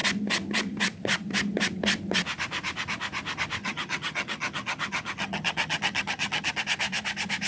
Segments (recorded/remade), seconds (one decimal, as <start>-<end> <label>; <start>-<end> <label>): 0.0-3.6 recorded; 3.6-6.6 remade; 6.6-7.5 recorded